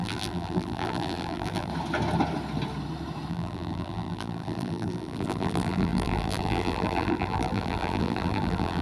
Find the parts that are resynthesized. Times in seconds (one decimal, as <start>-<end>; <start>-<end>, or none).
0.0-1.7; 3.3-8.8